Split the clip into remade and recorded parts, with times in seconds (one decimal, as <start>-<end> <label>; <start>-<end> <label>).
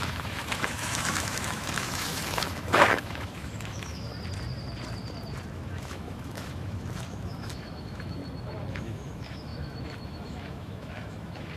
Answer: 0.0-4.1 remade; 4.1-5.5 recorded; 5.5-8.2 remade; 8.2-8.7 recorded; 8.7-11.6 remade